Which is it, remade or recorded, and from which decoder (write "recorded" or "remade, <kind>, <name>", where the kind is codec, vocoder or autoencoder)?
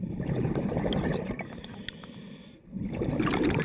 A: remade, vocoder, BigVGAN v2